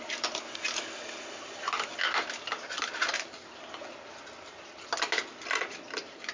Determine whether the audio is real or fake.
real